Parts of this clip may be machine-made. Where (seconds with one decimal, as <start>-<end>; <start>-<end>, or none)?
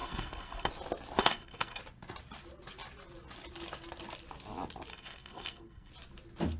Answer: 0.0-0.7; 1.2-1.8; 4.9-5.9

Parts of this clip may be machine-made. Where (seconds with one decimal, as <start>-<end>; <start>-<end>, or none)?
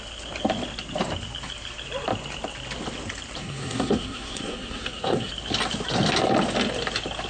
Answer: 3.4-5.3